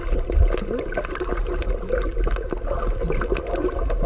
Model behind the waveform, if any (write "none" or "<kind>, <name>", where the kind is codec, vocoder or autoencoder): none